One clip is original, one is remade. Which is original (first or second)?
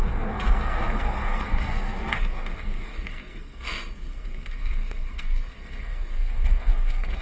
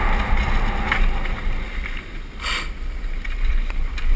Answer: second